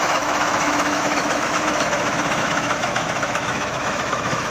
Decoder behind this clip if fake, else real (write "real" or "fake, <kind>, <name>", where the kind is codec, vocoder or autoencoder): fake, autoencoder, DAC-VAE